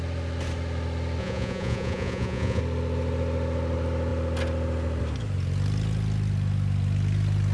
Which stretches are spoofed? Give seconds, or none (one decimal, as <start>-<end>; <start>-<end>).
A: 1.2-2.6